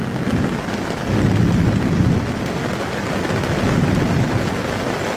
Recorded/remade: recorded